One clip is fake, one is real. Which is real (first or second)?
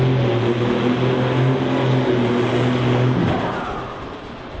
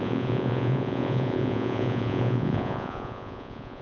first